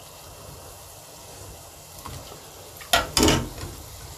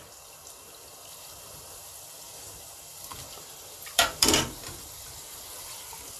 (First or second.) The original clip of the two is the first